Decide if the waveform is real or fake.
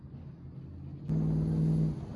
real